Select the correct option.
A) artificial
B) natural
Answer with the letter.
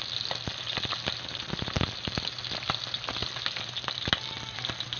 B